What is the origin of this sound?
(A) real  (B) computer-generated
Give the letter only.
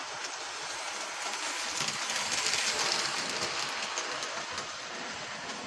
A